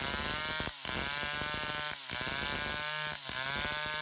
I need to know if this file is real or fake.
real